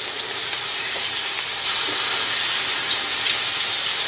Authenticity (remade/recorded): recorded